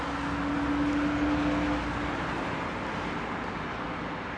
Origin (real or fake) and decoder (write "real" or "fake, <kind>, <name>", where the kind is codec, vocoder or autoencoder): real